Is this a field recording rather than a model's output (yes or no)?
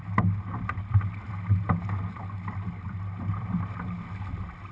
yes